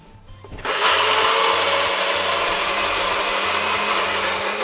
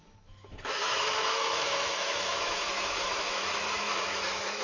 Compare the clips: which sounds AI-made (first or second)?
second